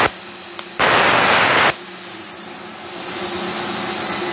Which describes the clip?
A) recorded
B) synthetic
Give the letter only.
A